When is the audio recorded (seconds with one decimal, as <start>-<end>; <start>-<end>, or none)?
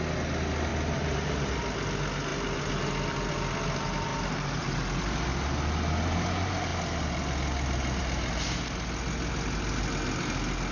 0.0-0.7; 1.5-4.1; 4.8-10.7